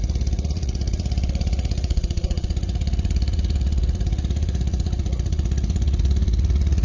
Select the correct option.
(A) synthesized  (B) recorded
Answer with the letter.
A